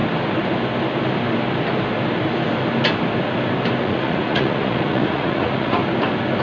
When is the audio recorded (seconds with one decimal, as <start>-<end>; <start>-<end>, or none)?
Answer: 0.0-3.8; 5.8-6.4